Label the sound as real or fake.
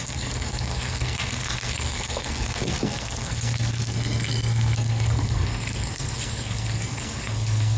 fake